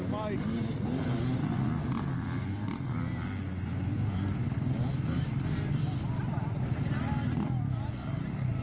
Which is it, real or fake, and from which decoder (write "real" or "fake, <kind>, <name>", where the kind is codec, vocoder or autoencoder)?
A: real